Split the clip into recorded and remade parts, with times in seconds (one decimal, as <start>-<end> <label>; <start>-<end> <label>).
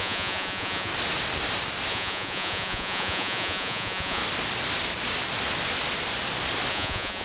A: 0.0-0.9 remade; 0.9-1.9 recorded; 1.9-4.2 remade; 4.2-6.7 recorded; 6.7-7.2 remade